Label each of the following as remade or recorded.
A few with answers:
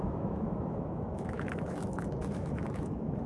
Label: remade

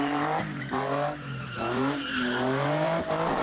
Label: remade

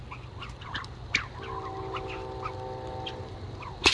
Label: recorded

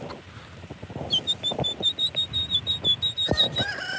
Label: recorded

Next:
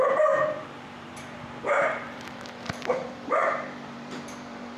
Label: remade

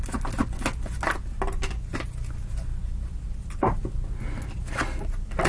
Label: recorded